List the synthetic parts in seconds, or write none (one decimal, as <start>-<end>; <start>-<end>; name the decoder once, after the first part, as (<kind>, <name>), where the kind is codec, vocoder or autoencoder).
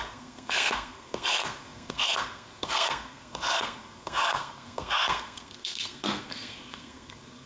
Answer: 0.0-7.5 (codec, SNAC)